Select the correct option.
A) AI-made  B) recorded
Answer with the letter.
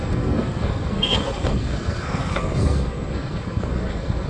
A